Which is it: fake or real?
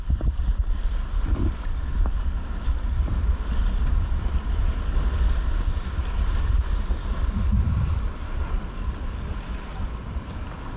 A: real